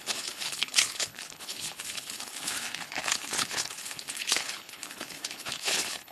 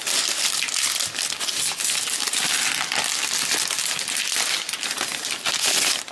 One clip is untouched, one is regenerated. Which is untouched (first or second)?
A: second